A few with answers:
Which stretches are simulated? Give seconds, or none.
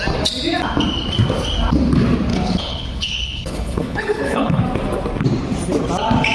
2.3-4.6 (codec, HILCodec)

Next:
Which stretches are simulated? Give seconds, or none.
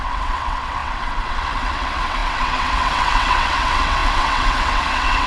0.0-5.3 (vocoder, WaveNeXt)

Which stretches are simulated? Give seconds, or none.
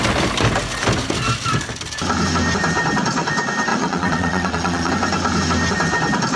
3.7-4.9 (vocoder, Vocos)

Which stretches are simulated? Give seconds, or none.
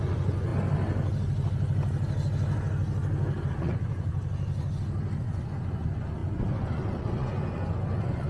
0.0-0.5 (vocoder, Vocos); 3.5-4.1; 5.2-8.3